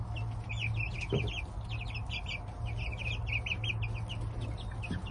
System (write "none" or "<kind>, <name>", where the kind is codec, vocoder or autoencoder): none